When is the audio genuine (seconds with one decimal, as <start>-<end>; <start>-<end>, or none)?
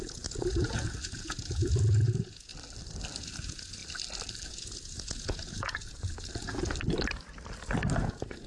2.5-3.2; 3.8-4.5; 6.6-8.0